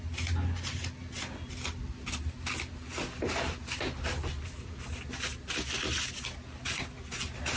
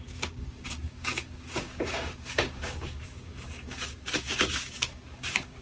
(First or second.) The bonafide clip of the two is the first